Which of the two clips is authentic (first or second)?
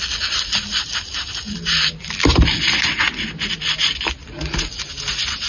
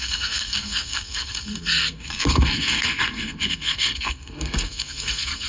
first